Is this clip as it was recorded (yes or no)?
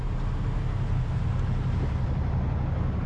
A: yes